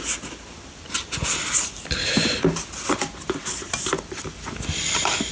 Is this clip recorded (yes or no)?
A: yes